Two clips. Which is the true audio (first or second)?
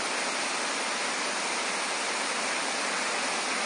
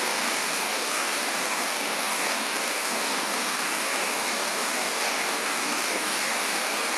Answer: first